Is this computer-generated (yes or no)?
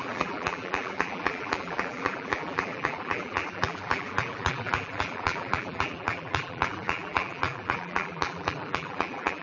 yes